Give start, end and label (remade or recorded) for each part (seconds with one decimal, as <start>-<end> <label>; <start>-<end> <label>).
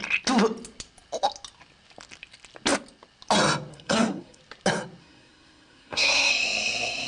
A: 0.0-3.7 recorded; 3.7-4.4 remade; 4.4-5.0 recorded; 5.0-6.3 remade; 6.3-7.1 recorded